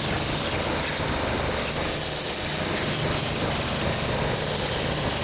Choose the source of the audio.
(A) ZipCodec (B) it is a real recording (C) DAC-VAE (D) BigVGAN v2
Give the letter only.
B